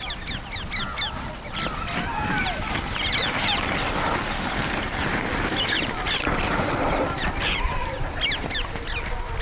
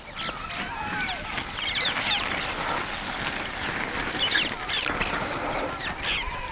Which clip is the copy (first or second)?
first